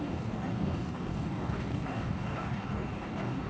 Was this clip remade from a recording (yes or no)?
yes